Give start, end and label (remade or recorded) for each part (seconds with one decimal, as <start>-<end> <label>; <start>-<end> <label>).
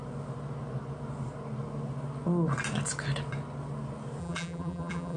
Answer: 0.0-4.2 recorded; 4.2-5.2 remade